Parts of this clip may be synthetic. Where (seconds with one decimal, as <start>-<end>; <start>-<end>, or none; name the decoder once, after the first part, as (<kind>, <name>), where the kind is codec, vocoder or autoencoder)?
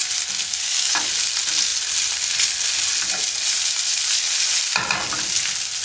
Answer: 0.4-1.1 (codec, DAC)